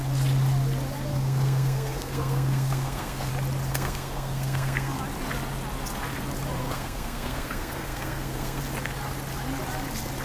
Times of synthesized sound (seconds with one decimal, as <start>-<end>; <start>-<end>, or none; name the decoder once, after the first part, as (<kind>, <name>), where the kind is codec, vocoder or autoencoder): 1.1-3.3 (codec, SNAC); 3.7-5.0; 6.6-8.6